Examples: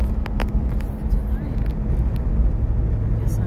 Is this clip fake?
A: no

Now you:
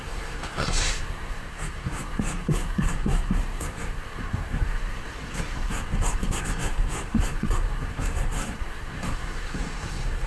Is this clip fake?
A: yes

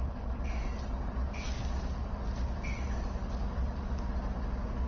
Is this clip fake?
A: no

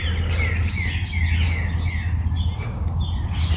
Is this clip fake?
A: no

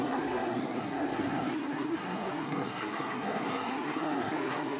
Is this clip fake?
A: yes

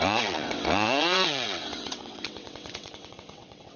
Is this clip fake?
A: yes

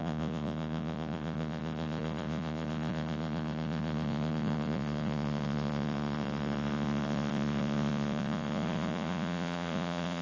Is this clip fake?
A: yes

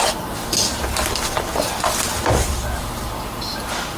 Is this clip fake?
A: no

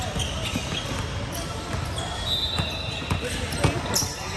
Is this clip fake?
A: no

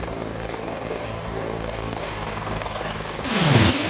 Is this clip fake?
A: yes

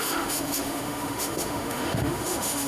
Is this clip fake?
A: yes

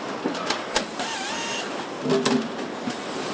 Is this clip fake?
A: no